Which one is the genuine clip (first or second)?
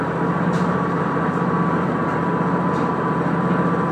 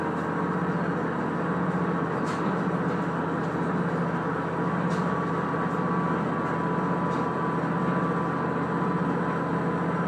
second